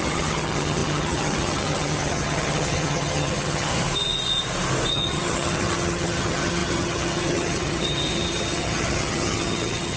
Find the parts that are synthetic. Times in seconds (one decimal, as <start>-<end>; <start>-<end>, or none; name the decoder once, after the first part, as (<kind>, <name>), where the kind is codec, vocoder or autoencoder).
0.0-3.7 (vocoder, HiFi-GAN); 4.9-10.0